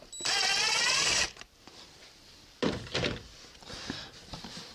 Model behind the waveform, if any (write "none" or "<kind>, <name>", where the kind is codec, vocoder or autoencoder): none